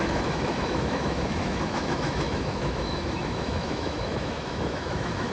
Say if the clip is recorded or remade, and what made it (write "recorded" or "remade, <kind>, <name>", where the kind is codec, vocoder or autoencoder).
remade, autoencoder, DAC-VAE